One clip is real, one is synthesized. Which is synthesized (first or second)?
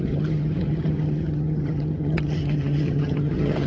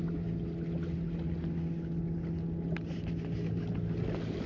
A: first